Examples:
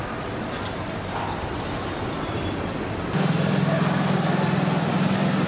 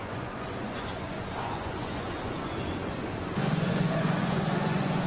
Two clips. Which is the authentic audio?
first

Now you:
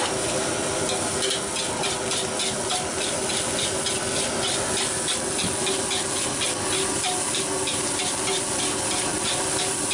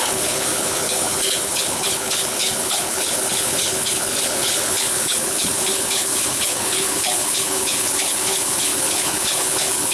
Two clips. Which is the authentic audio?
first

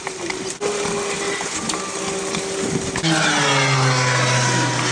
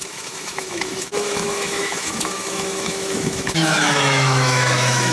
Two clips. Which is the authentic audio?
first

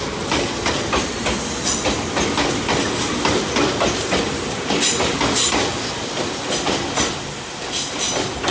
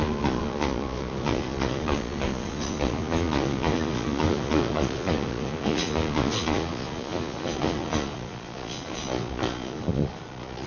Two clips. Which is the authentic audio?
first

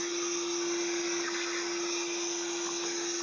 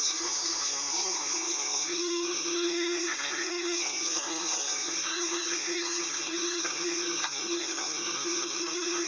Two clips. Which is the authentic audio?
first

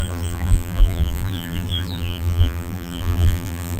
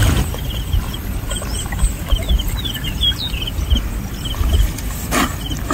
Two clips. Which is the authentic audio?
second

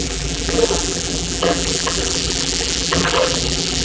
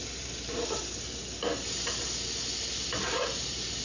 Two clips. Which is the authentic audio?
second